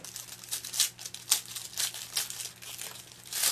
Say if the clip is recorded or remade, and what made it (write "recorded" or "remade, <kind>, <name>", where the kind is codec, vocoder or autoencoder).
recorded